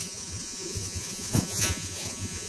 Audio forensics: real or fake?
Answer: fake